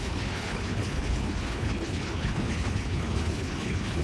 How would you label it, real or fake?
fake